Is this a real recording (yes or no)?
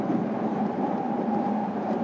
no